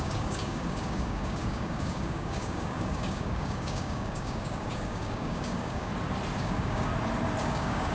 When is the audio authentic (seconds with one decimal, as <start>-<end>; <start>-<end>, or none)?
5.9-6.4; 6.9-7.4